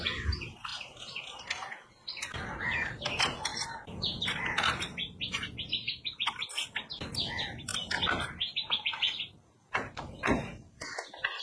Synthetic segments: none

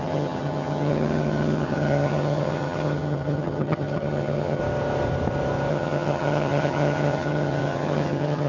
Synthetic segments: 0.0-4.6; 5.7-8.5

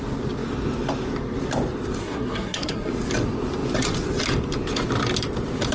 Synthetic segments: 2.0-2.9